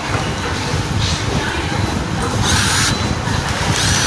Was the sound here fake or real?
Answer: real